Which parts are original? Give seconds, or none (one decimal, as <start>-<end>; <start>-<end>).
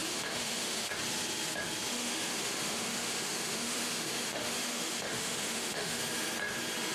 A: 0.9-1.9; 6.0-6.9